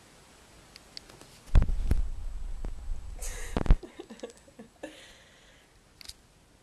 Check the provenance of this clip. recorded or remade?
recorded